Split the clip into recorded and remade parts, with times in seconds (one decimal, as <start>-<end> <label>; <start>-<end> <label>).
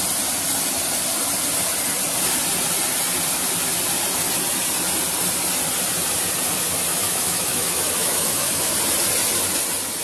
0.0-6.9 recorded; 6.9-8.7 remade; 8.7-10.0 recorded